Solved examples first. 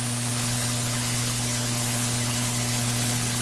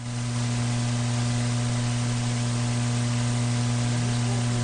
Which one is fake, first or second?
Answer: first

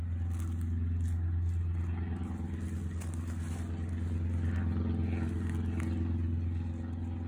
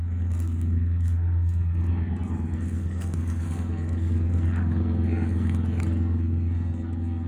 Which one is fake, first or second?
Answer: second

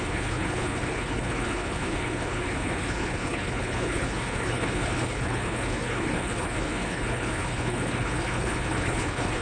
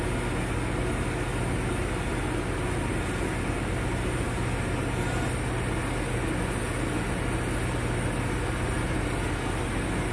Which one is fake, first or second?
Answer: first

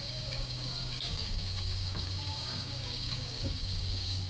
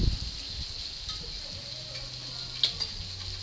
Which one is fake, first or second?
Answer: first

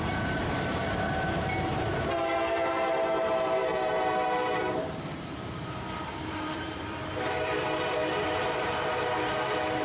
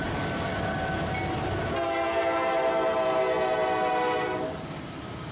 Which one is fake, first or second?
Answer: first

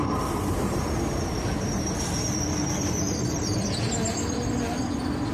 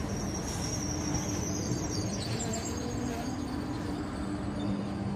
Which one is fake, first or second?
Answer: first